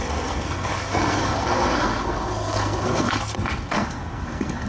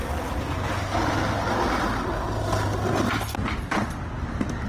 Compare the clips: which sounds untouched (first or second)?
second